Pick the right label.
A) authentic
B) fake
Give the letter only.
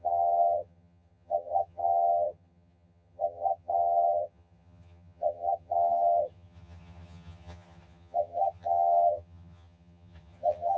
B